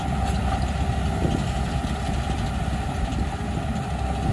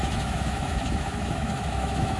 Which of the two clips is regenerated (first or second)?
second